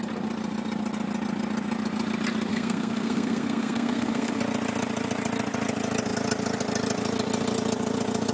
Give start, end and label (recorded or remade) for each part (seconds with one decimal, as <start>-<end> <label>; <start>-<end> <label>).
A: 0.0-2.5 recorded; 2.5-4.4 remade; 4.4-8.3 recorded